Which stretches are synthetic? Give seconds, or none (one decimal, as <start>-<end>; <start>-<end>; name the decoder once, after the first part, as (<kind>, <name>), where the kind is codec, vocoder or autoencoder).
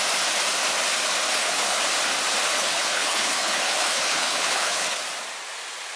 1.3-1.8 (codec, HILCodec); 2.5-5.0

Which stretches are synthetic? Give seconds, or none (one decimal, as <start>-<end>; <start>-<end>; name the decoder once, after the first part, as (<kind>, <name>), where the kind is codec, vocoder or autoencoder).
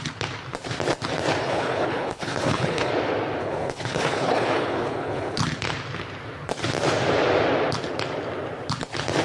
1.4-2.9 (codec, HILCodec); 3.4-5.4